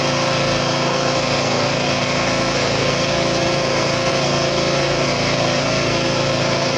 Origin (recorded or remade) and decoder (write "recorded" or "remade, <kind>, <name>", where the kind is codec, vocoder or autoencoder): remade, codec, SNAC